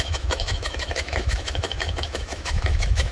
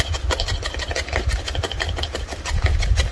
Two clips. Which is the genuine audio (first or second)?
second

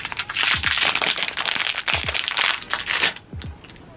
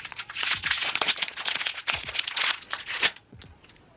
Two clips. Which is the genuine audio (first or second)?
first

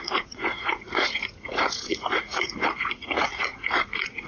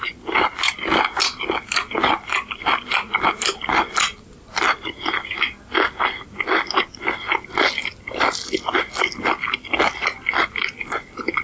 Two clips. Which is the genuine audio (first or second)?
second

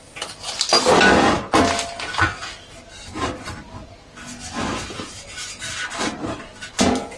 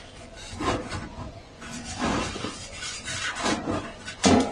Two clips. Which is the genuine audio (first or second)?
first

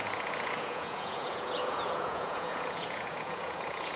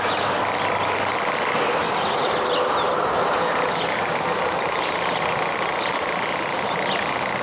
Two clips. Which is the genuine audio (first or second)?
second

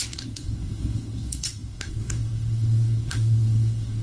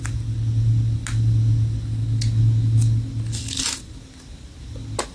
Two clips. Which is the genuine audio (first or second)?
second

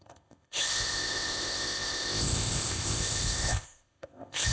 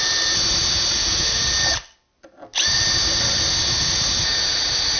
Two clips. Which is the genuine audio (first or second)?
second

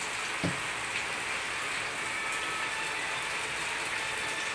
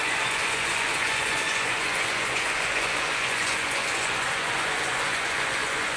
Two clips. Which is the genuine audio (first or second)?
first